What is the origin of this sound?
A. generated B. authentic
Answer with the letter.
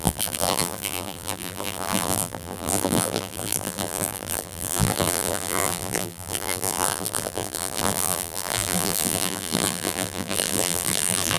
A